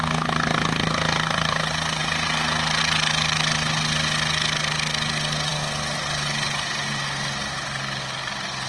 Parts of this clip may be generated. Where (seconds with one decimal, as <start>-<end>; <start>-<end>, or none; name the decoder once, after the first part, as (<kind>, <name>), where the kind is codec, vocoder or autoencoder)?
none